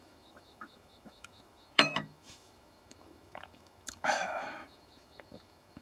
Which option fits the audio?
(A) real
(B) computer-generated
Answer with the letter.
B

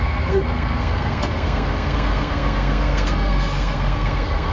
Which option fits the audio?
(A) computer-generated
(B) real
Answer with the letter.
A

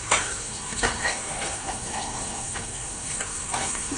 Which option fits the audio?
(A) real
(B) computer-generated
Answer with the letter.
B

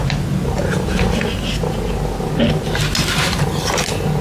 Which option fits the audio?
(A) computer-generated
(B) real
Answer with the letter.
B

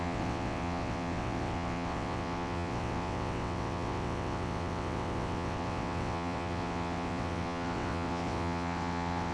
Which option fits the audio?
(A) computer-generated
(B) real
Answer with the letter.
A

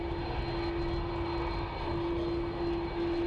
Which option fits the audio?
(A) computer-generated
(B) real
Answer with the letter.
B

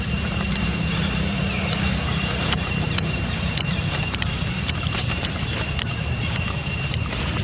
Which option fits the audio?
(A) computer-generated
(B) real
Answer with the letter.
A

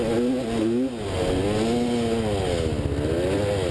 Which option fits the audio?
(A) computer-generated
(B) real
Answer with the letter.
B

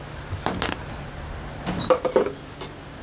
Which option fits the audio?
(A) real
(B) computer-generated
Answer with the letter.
A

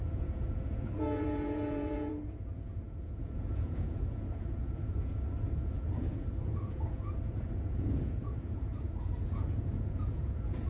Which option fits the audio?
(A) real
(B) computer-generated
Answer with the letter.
B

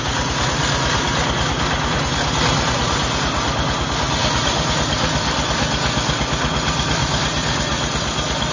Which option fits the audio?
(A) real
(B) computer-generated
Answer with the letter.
A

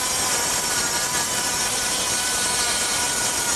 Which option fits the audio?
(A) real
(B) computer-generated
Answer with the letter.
A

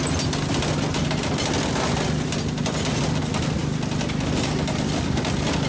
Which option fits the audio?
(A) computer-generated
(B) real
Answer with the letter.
B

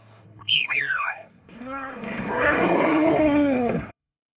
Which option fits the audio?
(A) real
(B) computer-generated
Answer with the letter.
B